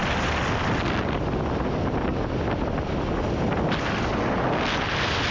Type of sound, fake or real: real